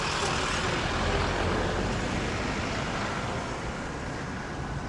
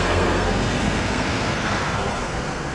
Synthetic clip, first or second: second